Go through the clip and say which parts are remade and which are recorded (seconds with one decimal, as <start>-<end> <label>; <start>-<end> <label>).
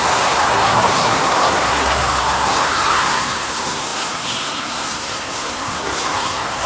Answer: 0.0-6.7 remade